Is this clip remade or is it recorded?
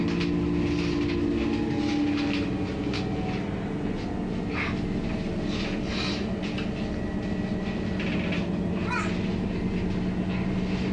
recorded